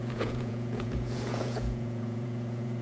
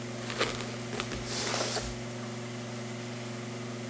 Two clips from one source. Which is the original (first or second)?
second